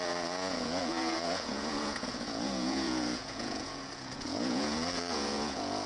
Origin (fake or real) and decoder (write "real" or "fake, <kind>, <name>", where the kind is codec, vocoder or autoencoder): fake, vocoder, Vocos